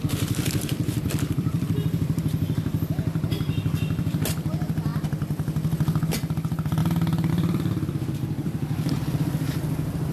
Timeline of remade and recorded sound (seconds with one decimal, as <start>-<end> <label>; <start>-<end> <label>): 0.0-4.9 remade; 4.9-6.1 recorded; 6.1-6.8 remade; 6.8-7.3 recorded; 7.3-10.1 remade